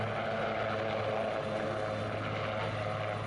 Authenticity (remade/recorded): recorded